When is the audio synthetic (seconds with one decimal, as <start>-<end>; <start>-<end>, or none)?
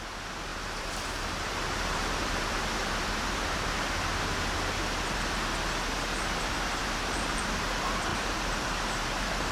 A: 0.5-4.2; 6.8-7.4; 8.1-9.5